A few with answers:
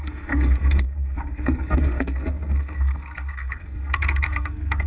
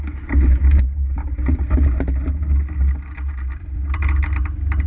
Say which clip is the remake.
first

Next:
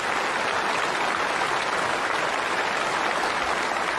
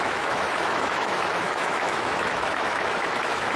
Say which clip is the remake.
second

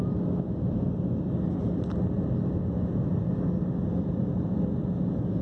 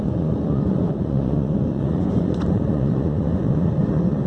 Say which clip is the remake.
second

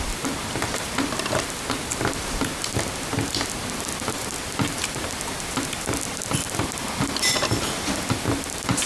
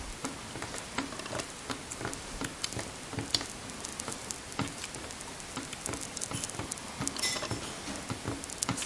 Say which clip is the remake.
first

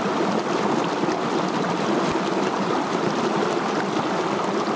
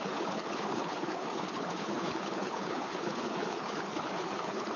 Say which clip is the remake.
second